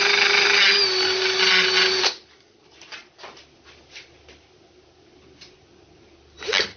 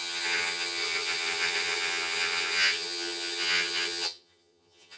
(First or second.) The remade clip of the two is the second